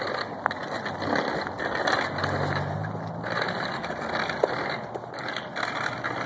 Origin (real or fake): real